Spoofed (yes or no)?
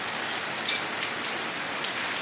no